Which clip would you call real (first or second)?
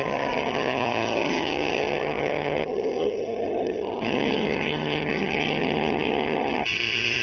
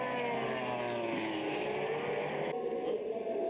second